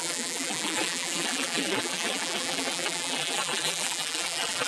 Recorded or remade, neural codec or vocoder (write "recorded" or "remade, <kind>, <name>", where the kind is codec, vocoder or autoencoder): remade, vocoder, BigVGAN v2